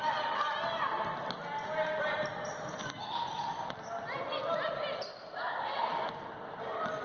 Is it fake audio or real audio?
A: real